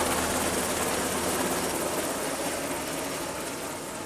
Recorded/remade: recorded